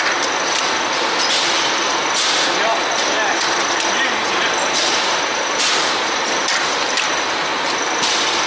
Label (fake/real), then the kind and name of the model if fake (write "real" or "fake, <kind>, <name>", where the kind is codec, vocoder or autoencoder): real